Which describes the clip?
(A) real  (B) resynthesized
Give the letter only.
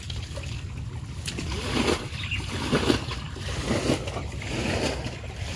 B